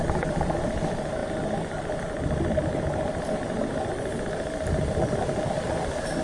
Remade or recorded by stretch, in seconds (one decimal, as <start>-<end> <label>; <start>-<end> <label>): 0.0-6.2 recorded